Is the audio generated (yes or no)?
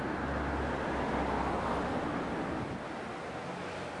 no